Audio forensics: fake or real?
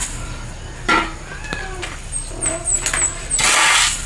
real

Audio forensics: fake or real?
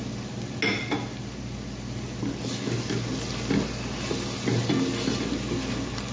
real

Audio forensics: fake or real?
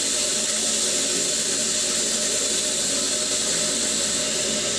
real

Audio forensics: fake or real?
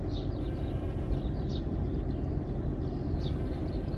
real